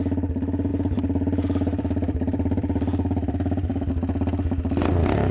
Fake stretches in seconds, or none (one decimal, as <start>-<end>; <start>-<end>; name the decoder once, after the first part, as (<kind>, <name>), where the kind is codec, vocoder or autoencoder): 0.7-3.9 (vocoder, BigVGAN v2)